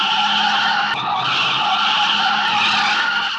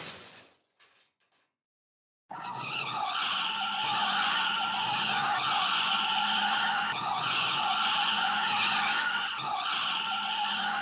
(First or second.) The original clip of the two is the first